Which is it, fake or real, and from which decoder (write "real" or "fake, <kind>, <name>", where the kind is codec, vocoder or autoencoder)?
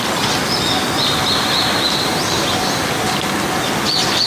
real